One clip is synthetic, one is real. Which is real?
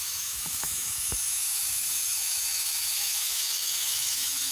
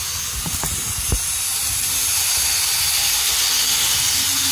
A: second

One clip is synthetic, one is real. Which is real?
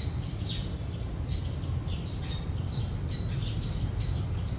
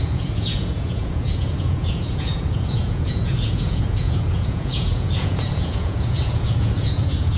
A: first